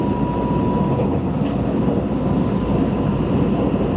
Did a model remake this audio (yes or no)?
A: no